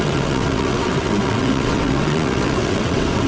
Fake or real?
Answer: fake